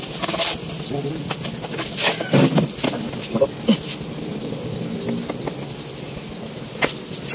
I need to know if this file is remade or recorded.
recorded